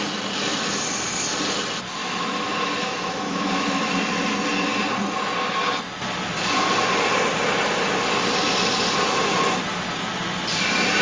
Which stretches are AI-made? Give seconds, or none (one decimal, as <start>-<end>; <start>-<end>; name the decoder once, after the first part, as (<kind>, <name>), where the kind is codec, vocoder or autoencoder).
2.0-3.9 (autoencoder, DAC-VAE)